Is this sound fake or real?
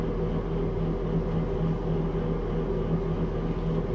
real